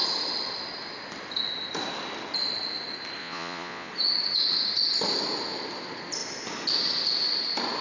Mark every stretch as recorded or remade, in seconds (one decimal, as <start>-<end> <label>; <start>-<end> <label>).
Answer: 0.0-3.2 recorded; 3.2-3.9 remade; 3.9-7.8 recorded